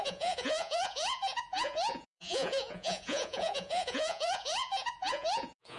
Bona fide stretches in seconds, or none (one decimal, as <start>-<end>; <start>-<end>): none